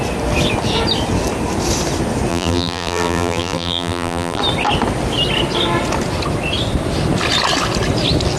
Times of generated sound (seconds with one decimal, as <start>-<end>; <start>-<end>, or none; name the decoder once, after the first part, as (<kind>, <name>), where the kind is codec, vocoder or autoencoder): 2.3-4.4 (vocoder, BigVGAN v2)

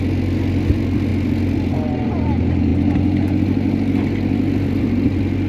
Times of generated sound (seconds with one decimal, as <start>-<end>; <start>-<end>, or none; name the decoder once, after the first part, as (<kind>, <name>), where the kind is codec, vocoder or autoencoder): none

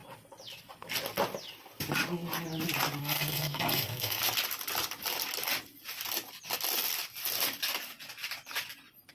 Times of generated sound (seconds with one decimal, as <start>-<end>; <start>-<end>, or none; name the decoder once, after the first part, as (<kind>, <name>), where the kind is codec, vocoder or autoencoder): 3.0-4.2 (codec, SNAC)

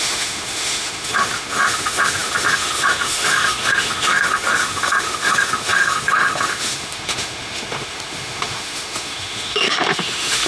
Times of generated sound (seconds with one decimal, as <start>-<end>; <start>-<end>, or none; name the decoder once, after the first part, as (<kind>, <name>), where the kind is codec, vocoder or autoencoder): 0.0-10.5 (autoencoder, DAC-VAE)

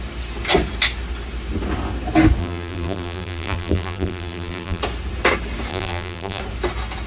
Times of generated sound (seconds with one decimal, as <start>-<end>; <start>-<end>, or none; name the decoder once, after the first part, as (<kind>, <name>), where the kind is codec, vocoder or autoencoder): 2.4-4.8 (vocoder, BigVGAN v2); 5.7-6.4